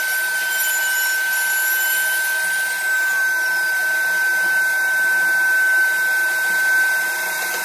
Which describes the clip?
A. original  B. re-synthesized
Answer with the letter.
A